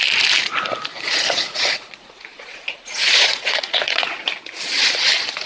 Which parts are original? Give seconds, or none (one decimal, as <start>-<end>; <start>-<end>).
0.0-0.9; 4.2-5.5